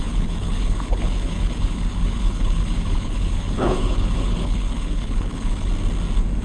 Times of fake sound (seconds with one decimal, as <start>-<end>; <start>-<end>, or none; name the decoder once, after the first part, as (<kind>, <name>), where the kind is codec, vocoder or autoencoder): 0.0-5.7 (codec, HILCodec)